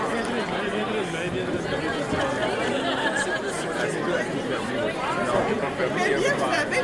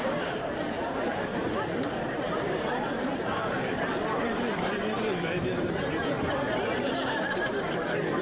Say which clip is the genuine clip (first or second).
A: first